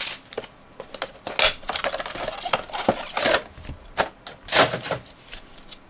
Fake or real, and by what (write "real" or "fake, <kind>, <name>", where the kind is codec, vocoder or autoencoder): real